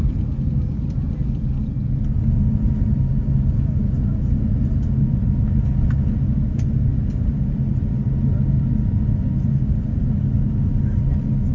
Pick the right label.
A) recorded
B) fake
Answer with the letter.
A